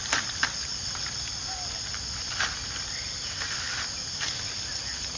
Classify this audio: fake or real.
real